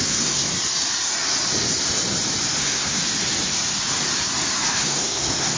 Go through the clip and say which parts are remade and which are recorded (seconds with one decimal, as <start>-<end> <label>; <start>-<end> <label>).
0.0-0.5 remade; 0.5-2.6 recorded; 2.6-3.0 remade; 3.0-4.8 recorded; 4.8-5.6 remade